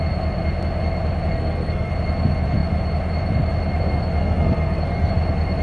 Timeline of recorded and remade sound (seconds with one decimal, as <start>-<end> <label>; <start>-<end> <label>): 0.0-1.3 recorded; 1.3-1.9 remade; 1.9-4.2 recorded; 4.2-5.1 remade; 5.1-5.6 recorded